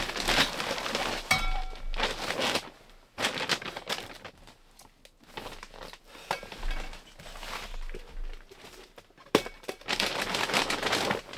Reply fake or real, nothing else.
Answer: real